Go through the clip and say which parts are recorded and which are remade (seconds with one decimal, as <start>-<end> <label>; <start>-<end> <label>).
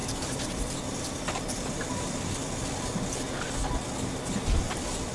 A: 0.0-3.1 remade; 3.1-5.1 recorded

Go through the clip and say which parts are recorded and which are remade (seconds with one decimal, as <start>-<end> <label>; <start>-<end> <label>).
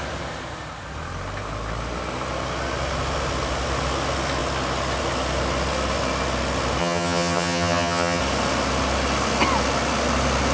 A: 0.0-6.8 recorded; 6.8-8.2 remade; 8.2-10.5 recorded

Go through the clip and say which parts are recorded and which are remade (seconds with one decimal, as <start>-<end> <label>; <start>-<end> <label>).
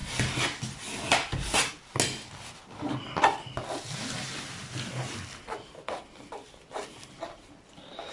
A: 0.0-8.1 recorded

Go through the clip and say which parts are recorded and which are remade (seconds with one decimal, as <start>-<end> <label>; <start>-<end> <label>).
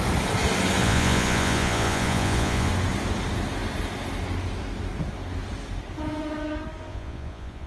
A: 0.0-0.8 recorded; 0.8-2.7 remade; 2.7-6.9 recorded; 6.9-7.7 remade